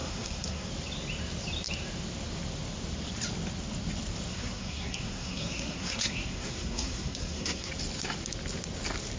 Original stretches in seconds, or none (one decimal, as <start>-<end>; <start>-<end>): 0.7-4.3; 7.7-9.2